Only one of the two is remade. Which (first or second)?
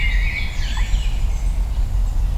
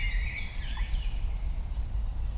second